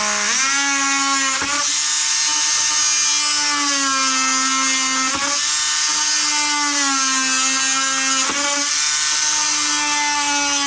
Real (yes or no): yes